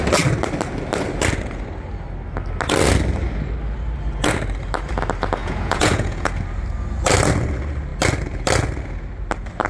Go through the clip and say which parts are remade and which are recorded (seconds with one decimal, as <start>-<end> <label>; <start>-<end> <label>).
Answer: 0.0-5.4 recorded; 5.4-6.3 remade; 6.3-9.7 recorded